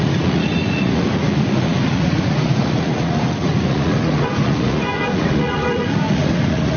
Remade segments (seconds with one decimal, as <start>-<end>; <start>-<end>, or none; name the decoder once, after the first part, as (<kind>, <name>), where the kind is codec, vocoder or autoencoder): 0.0-6.8 (vocoder, Vocos)

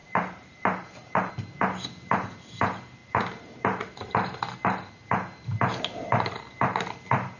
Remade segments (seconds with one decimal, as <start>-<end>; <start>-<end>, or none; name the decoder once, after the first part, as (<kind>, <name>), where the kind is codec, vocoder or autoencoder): 0.0-1.3 (vocoder, BigVGAN v2); 3.0-4.9; 5.7-6.4